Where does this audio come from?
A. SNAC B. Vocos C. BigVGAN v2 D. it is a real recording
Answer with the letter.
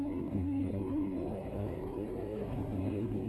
A